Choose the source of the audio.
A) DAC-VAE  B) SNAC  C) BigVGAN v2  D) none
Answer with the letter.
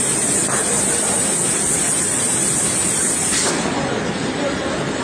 C